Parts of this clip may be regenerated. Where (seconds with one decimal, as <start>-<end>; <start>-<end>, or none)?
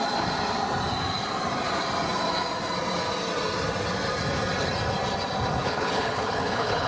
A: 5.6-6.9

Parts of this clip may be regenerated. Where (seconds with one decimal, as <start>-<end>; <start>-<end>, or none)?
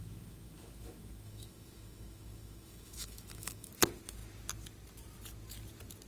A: 0.0-3.7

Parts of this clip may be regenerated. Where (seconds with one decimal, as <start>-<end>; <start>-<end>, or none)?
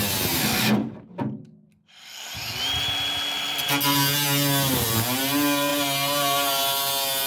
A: none